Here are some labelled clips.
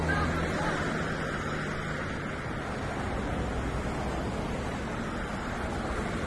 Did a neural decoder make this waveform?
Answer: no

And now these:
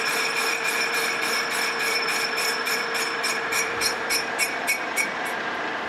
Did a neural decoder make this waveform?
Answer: yes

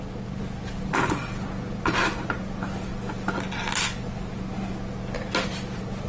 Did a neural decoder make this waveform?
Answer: no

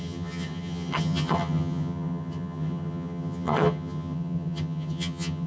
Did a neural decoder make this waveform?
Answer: yes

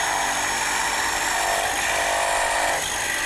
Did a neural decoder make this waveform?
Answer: no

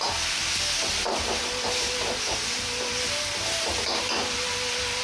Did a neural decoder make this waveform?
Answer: no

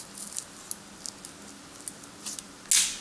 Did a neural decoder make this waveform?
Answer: no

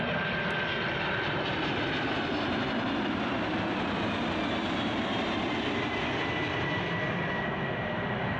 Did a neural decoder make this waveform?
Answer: no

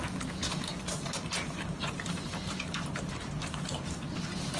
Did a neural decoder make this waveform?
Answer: yes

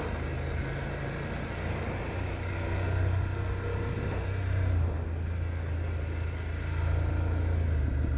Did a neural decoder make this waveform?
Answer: no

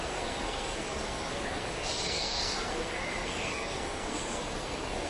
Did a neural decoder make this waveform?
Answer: yes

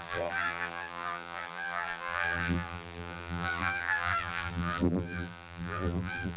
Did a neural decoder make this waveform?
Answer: yes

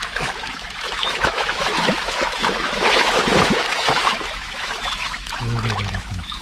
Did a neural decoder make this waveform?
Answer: yes